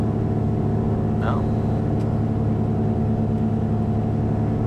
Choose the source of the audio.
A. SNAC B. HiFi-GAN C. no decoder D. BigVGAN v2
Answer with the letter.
C